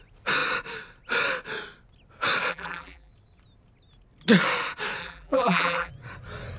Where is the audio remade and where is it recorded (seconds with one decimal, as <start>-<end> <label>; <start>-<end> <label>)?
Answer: 0.0-2.5 recorded; 2.5-3.1 remade; 3.1-5.0 recorded; 5.0-5.9 remade; 5.9-6.6 recorded